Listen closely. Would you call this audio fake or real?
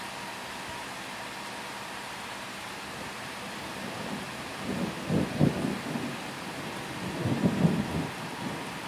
real